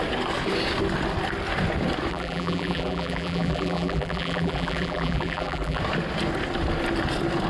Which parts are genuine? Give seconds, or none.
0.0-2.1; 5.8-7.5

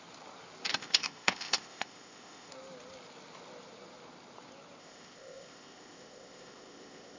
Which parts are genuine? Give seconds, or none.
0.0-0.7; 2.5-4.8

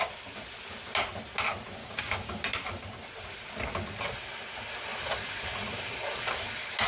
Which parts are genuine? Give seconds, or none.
0.0-1.8; 2.4-6.9